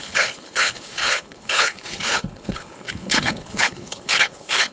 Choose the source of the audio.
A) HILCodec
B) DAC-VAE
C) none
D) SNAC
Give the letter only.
A